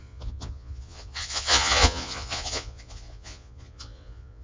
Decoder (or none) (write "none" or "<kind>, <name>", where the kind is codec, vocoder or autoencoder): vocoder, Vocos